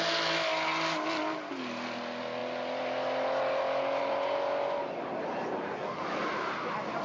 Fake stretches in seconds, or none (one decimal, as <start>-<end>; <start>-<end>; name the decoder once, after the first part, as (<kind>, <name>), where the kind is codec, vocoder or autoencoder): none